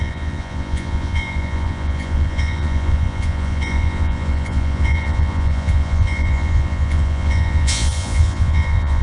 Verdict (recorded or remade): remade